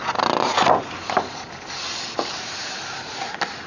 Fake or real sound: real